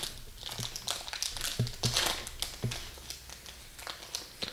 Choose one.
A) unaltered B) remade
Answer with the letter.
A